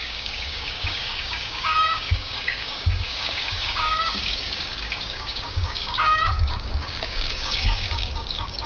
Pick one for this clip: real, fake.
fake